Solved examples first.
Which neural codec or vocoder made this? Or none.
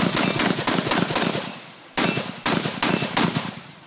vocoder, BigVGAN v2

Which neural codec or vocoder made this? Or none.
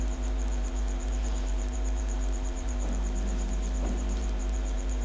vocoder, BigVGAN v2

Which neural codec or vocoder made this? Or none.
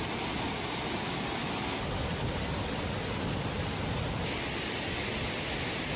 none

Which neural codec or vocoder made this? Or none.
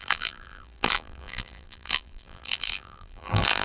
vocoder, BigVGAN v2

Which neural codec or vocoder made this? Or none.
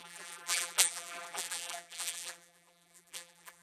vocoder, BigVGAN v2